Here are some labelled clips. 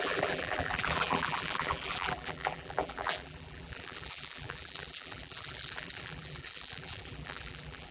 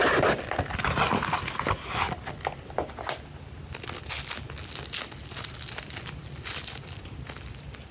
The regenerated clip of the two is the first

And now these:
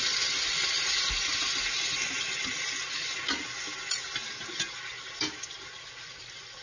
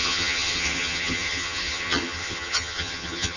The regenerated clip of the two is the second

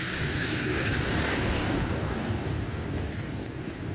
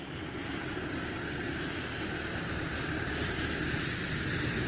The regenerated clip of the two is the first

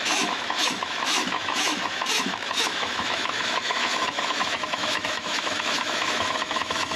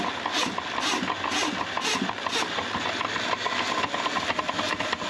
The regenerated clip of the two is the first